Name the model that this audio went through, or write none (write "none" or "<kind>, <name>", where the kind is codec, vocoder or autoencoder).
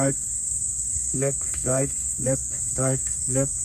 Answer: codec, SNAC